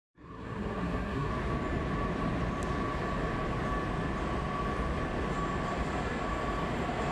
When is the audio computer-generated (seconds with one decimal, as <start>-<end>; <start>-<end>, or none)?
0.0-1.3

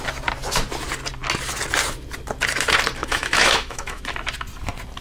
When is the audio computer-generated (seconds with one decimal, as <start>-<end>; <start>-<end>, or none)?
3.0-4.0

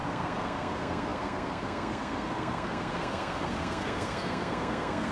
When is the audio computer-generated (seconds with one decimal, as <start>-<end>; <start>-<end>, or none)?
0.0-5.1

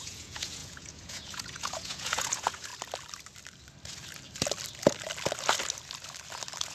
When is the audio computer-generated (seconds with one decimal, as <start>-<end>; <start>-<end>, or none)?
0.0-2.7

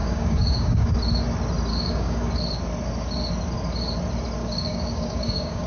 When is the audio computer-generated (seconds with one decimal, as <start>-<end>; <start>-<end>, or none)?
0.0-0.9; 1.7-2.3; 4.4-5.7

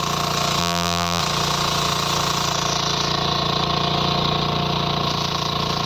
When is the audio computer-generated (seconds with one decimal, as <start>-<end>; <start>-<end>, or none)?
0.6-1.2

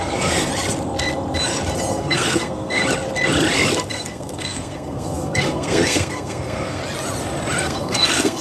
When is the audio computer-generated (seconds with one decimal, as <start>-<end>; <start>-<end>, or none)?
0.0-0.5; 1.9-2.8; 3.9-6.8; 7.6-8.4

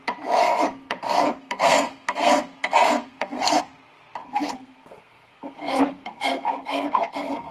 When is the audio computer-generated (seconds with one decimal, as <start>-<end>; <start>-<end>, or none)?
0.4-3.6; 4.2-7.5